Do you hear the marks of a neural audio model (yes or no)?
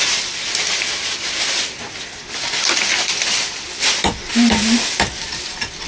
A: no